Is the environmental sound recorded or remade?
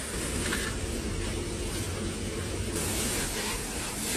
recorded